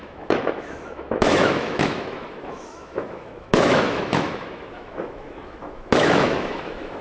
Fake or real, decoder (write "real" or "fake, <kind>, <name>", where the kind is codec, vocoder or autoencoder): fake, autoencoder, DAC-VAE